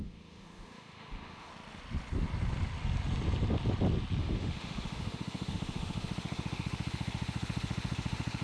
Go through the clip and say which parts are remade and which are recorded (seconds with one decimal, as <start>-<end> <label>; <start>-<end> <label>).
0.0-1.5 remade; 1.5-4.2 recorded; 4.2-8.4 remade